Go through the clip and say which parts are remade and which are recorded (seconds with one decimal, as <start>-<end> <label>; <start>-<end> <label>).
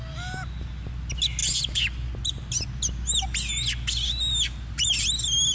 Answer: 0.0-5.5 recorded